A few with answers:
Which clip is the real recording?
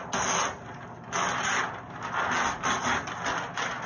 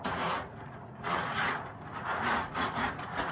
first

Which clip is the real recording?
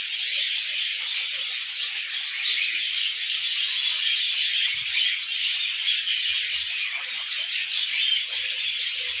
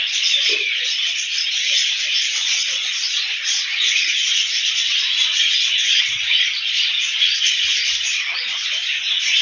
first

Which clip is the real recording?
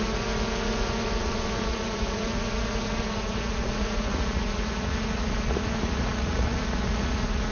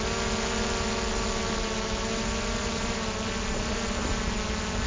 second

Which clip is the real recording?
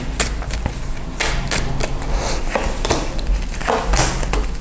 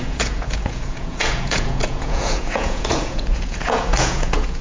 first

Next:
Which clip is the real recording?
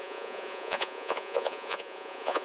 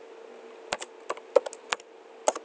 second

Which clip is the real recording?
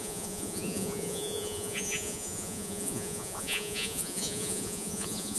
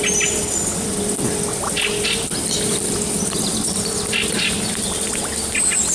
second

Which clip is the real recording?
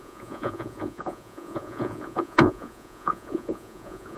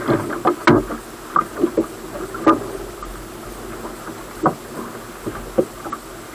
second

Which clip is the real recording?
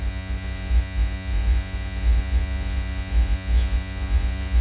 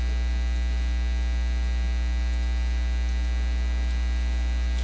second